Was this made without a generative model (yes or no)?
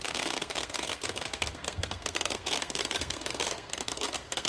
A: no